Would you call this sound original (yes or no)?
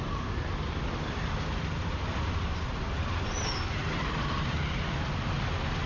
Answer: yes